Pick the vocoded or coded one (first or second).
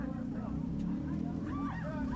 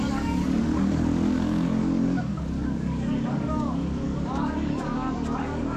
second